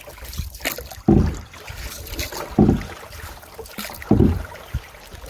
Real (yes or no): yes